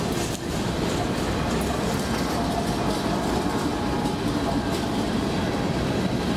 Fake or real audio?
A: real